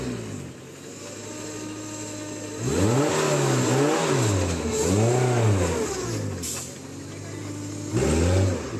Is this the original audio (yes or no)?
yes